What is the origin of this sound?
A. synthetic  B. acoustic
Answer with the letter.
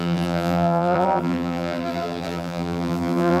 A